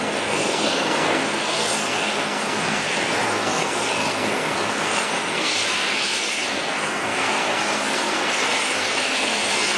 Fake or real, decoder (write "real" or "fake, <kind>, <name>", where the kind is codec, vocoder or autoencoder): fake, codec, SNAC